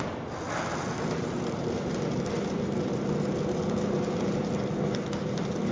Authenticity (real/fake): real